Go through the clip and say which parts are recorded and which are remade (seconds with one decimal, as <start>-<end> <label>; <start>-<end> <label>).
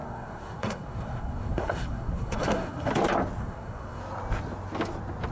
0.0-2.9 remade; 2.9-3.4 recorded; 3.4-4.0 remade; 4.0-5.3 recorded